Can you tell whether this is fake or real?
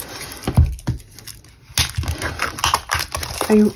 real